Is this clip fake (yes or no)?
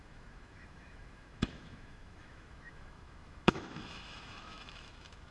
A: yes